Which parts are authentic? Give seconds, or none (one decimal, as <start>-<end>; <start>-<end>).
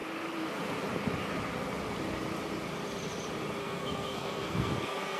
0.0-3.6